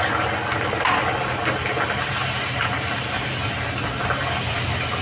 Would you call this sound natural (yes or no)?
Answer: yes